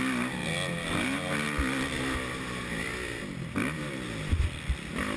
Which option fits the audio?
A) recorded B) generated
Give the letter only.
A